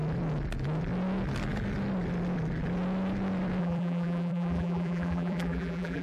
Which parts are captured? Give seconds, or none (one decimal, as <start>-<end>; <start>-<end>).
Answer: 0.0-3.6